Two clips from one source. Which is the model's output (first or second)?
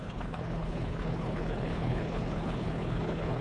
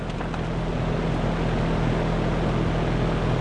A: first